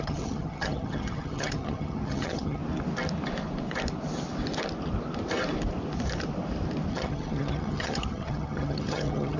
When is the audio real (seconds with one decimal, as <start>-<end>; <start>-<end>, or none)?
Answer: 2.6-6.9